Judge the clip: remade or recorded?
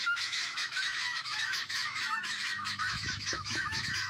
remade